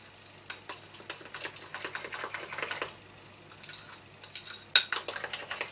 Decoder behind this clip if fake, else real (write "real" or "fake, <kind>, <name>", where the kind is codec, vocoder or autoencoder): real